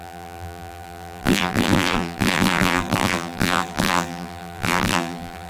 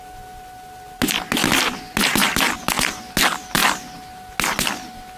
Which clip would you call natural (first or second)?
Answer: second